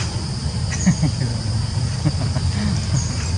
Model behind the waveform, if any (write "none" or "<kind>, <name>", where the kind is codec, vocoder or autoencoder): none